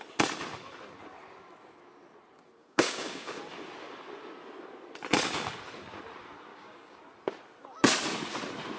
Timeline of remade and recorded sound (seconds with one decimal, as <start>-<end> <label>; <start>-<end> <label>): 0.0-2.6 recorded; 2.6-3.4 remade; 3.4-6.5 recorded; 6.5-7.0 remade; 7.0-8.8 recorded